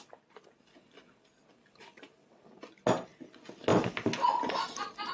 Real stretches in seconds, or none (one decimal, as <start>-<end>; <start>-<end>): 0.0-5.1